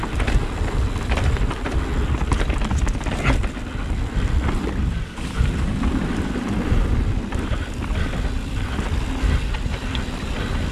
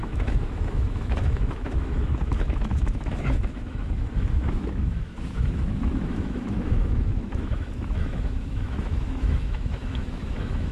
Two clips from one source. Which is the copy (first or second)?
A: second